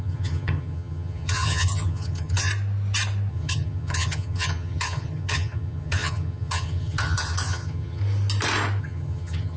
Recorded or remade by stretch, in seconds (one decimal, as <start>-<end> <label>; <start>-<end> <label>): 0.0-2.5 remade; 2.5-3.3 recorded; 3.3-8.0 remade; 8.0-8.8 recorded; 8.8-9.6 remade